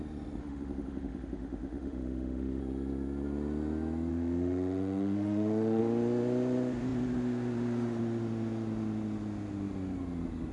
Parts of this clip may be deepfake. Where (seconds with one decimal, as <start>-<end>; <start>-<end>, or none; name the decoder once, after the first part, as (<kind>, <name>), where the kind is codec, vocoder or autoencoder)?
0.4-2.6 (autoencoder, DAC-VAE); 4.1-5.8

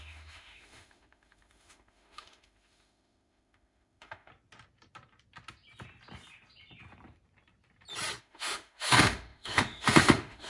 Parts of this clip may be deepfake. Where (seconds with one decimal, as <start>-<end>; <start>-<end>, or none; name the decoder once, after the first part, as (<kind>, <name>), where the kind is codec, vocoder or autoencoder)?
0.0-4.3 (autoencoder, DAC-VAE); 8.2-10.5